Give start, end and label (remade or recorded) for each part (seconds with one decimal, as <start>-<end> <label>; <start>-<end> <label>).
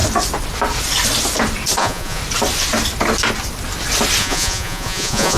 0.0-1.8 recorded; 1.8-2.2 remade; 2.2-4.2 recorded; 4.2-5.4 remade